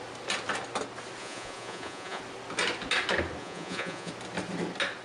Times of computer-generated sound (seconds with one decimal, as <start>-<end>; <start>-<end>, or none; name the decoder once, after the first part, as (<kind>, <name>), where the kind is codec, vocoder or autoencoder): 1.2-2.2 (vocoder, Vocos); 3.4-4.1